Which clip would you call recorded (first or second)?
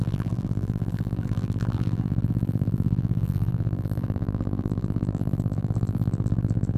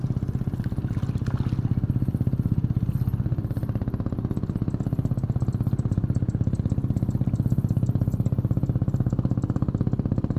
second